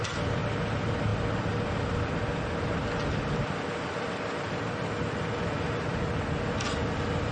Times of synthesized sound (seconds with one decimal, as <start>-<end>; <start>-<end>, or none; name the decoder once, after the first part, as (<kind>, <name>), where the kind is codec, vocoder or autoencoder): none